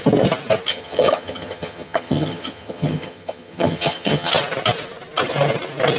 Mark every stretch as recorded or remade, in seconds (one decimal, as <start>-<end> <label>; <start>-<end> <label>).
0.0-0.7 recorded; 0.7-4.3 remade; 4.3-6.0 recorded